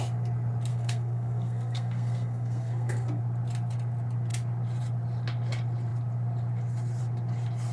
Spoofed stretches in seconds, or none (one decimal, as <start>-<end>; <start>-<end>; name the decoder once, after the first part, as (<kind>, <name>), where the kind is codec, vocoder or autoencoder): 0.7-3.2 (codec, SNAC)